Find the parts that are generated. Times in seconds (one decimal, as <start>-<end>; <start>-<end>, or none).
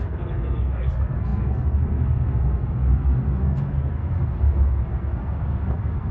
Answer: 0.0-6.1